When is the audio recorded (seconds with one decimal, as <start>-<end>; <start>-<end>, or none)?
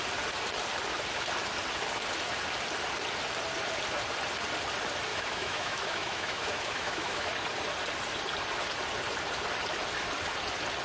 0.0-5.1; 7.3-10.8